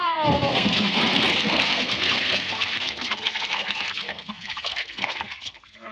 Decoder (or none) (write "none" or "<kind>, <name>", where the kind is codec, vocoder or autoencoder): codec, SNAC